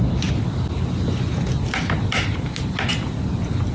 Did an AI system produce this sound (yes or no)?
no